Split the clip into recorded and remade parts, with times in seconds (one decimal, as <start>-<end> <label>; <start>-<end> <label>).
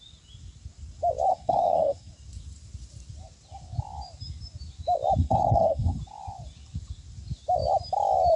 0.0-1.3 recorded; 1.3-2.1 remade; 2.1-5.2 recorded; 5.2-6.0 remade; 6.0-8.4 recorded